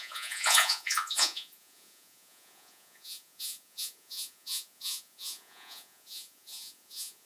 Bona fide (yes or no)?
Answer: no